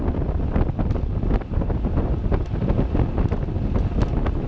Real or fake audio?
real